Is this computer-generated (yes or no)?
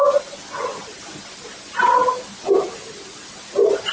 no